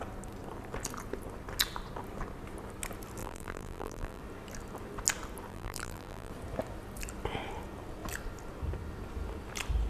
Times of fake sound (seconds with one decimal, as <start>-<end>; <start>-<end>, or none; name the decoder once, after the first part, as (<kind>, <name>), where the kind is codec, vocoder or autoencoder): 3.2-4.2 (vocoder, BigVGAN v2); 5.5-6.3